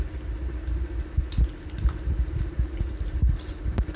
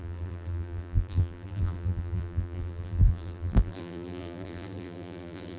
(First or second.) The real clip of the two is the first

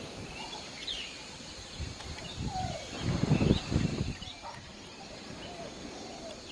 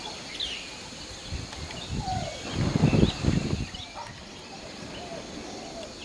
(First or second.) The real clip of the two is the second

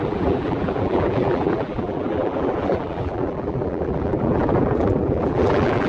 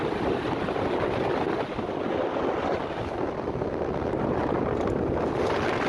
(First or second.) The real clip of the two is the second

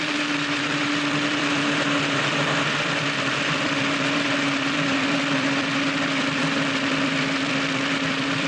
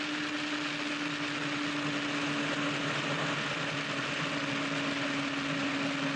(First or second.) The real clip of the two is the second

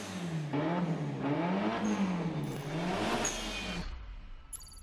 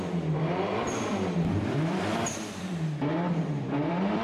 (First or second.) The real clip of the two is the first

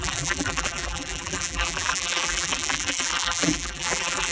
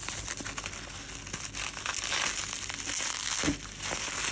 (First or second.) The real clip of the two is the second